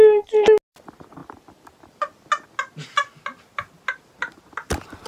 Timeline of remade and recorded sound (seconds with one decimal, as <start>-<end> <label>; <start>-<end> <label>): 0.0-5.1 recorded

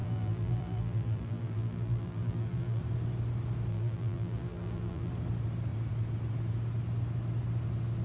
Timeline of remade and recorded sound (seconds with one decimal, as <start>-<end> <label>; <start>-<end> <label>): 0.0-2.8 remade; 2.8-3.7 recorded; 3.7-5.1 remade; 5.1-8.0 recorded

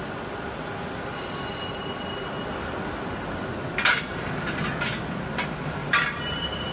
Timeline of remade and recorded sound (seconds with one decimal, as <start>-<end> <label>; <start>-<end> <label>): 0.0-5.8 recorded; 5.8-6.7 remade

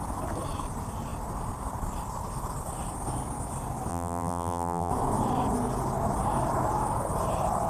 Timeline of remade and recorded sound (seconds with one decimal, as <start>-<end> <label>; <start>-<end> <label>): 0.0-3.9 recorded; 3.9-4.9 remade; 4.9-7.7 recorded

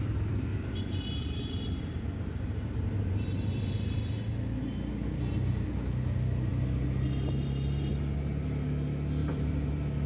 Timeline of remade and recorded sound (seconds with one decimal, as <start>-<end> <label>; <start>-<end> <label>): 0.0-0.5 recorded; 0.5-4.2 remade; 4.2-9.2 recorded; 9.2-9.7 remade; 9.7-10.1 recorded

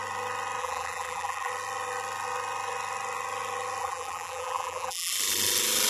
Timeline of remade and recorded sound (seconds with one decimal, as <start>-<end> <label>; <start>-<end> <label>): 0.0-0.6 recorded; 0.6-1.5 remade; 1.5-3.8 recorded; 3.8-5.1 remade; 5.1-5.9 recorded